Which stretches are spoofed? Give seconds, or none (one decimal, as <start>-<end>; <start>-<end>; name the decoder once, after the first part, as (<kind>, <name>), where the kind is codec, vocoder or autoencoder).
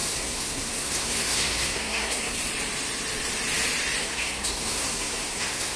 0.0-2.4 (codec, SNAC); 4.0-5.8